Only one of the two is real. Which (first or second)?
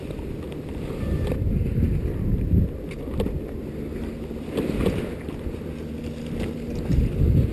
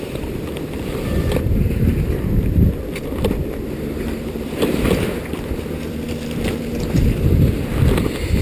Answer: first